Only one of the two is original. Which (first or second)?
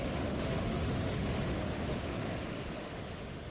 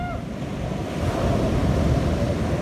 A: second